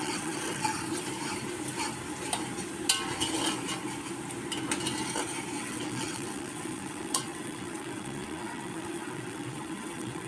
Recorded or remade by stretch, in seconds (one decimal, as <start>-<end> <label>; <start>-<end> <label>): 0.0-0.7 remade; 0.7-5.6 recorded; 5.6-10.3 remade